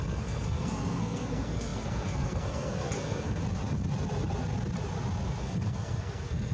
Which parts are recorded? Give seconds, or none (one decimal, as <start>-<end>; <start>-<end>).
3.4-5.4